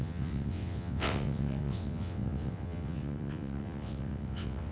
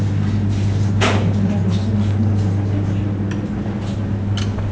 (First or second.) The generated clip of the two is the first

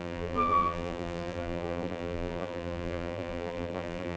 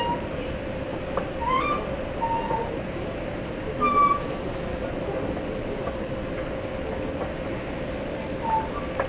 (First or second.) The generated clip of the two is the first